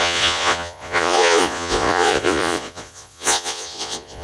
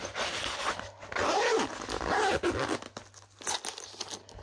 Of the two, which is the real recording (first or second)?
second